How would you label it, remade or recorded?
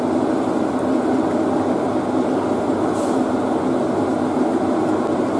recorded